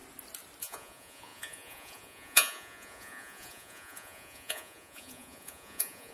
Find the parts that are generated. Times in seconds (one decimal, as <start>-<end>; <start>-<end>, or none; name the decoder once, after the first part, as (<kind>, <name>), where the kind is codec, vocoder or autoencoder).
0.6-6.1 (vocoder, Vocos)

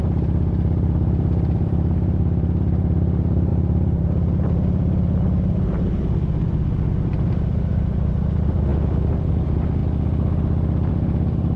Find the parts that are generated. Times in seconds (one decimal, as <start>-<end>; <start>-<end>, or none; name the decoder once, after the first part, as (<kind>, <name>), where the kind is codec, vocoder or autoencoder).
0.0-9.8 (vocoder, BigVGAN v2); 10.9-11.6